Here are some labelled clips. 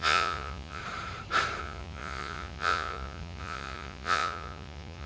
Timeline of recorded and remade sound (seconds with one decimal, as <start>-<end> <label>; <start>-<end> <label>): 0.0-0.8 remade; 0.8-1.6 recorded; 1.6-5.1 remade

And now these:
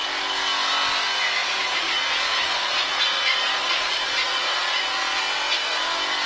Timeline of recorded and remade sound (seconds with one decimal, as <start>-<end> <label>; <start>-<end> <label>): 0.0-1.4 recorded; 1.4-5.2 remade; 5.2-6.3 recorded

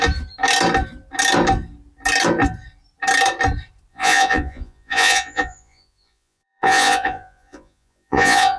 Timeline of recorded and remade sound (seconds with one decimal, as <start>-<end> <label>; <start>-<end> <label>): 0.0-3.9 recorded; 3.9-8.6 remade

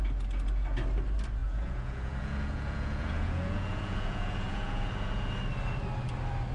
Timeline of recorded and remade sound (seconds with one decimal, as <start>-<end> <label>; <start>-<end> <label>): 0.0-1.4 recorded; 1.4-5.3 remade; 5.3-6.5 recorded

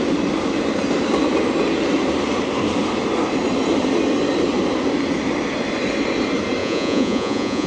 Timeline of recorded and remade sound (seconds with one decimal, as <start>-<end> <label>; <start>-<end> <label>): 0.0-6.6 recorded; 6.6-7.7 remade

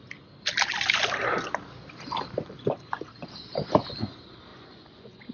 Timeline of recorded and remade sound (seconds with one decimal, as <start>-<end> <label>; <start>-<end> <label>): 0.0-4.5 recorded; 4.5-5.3 remade

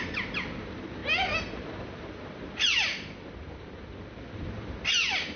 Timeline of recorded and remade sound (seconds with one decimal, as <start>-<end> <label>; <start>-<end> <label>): 0.0-5.4 recorded